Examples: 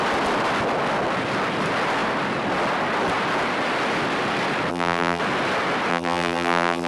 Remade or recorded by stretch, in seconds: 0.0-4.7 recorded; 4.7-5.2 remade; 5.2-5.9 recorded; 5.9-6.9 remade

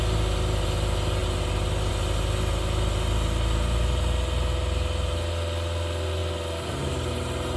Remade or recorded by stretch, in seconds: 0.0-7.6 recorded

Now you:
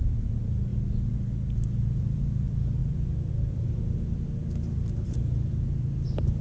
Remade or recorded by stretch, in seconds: 0.0-0.7 remade; 0.7-2.0 recorded; 2.0-6.4 remade